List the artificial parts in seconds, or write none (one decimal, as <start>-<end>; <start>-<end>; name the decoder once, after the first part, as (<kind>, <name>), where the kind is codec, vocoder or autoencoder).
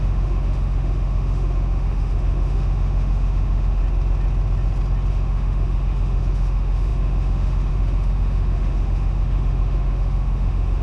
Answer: 0.0-3.8 (autoencoder, DAC-VAE); 5.1-10.8